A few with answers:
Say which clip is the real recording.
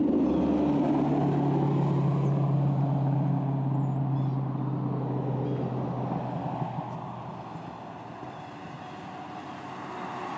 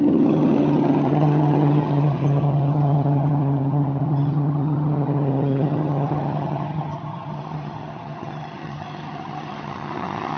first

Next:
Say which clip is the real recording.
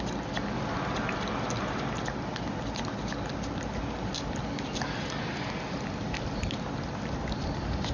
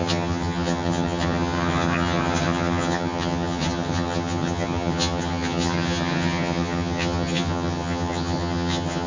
first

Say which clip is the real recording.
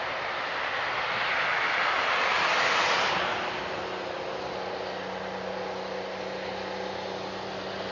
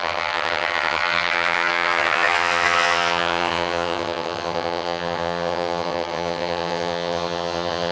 first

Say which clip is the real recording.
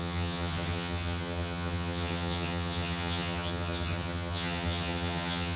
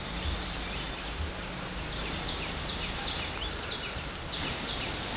second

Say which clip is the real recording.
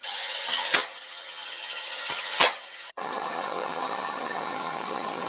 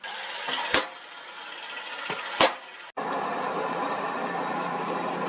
second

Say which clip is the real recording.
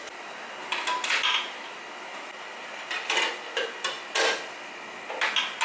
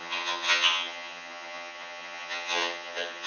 first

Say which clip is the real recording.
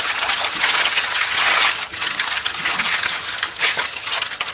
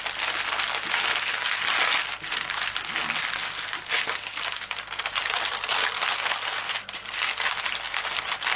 second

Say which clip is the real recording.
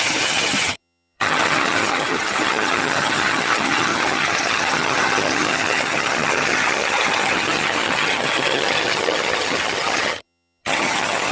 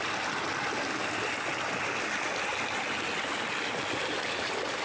second